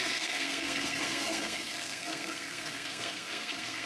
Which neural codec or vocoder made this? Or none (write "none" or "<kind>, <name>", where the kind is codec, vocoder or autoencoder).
codec, SNAC